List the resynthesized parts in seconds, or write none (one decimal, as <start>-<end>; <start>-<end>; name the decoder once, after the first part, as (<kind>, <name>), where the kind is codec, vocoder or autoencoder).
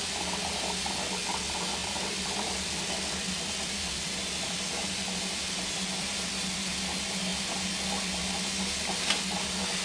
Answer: 1.8-6.3 (vocoder, BigVGAN v2)